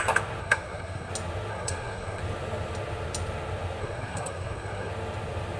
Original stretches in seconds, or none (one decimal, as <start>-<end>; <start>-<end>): 0.0-0.4; 1.1-1.5; 2.2-3.8; 4.9-5.6